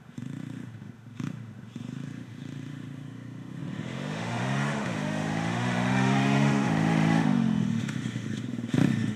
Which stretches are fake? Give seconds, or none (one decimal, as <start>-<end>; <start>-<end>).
0.0-9.2